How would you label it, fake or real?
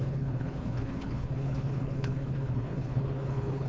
fake